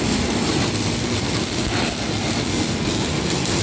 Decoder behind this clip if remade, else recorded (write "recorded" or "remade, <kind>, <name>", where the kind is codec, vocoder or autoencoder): recorded